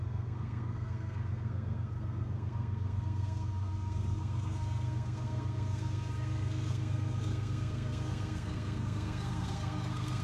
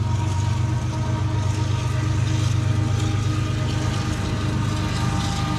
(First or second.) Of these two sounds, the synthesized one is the first